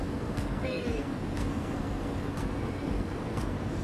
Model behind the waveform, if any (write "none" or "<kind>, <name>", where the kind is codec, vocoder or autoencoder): codec, SNAC